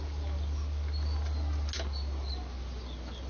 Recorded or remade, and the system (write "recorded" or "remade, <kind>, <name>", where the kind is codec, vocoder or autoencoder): recorded